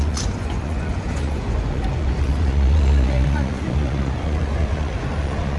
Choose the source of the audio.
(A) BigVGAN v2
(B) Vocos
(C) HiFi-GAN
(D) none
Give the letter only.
B